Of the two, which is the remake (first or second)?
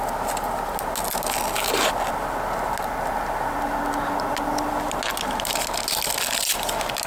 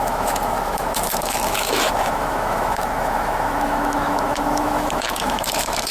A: second